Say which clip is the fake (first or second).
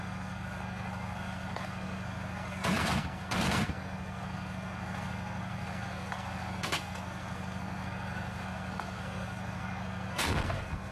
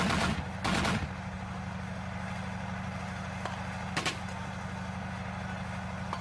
first